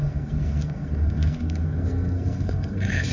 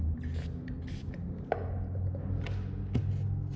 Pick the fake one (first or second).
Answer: first